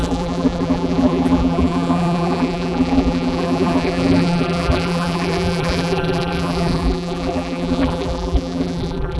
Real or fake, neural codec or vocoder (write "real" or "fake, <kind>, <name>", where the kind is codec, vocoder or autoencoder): fake, vocoder, BigVGAN v2